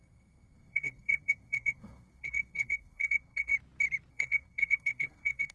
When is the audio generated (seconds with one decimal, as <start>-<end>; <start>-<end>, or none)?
0.0-3.5; 4.1-5.5